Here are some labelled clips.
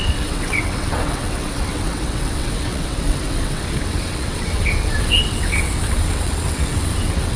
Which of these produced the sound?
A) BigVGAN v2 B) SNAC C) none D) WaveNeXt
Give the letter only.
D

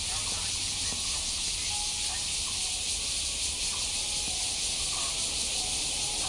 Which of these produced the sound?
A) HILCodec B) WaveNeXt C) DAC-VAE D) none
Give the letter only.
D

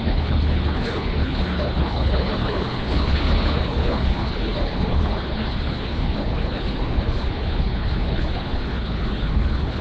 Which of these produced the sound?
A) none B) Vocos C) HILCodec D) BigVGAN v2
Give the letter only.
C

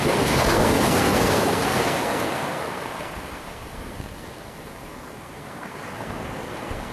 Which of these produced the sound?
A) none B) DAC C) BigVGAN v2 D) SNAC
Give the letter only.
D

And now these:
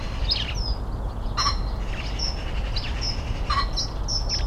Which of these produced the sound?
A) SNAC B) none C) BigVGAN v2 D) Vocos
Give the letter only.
B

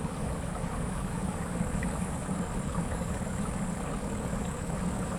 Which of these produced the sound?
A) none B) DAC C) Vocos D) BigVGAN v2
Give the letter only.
B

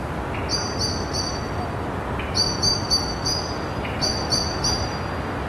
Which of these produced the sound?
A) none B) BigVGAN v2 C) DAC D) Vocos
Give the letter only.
A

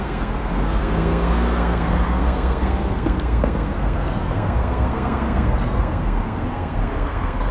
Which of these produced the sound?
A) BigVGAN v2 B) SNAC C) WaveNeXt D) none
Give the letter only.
B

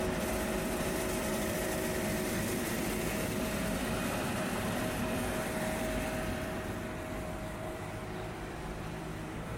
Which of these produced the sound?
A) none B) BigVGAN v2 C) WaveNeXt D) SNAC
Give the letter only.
B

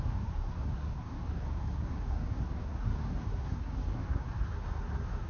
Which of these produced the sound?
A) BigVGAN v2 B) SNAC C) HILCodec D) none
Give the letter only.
B